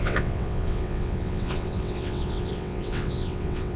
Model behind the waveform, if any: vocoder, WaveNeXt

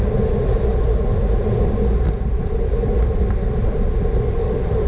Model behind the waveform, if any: vocoder, BigVGAN v2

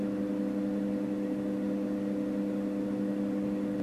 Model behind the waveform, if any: none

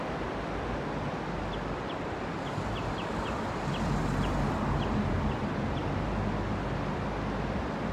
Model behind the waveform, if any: none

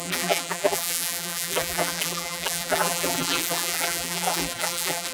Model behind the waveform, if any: vocoder, BigVGAN v2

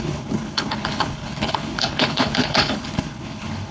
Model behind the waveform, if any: codec, HILCodec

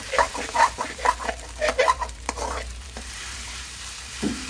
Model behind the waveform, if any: vocoder, BigVGAN v2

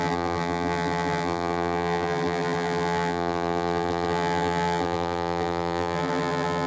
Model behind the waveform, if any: vocoder, BigVGAN v2